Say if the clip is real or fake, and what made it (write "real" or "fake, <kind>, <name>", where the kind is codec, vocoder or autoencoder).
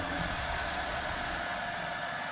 fake, vocoder, Vocos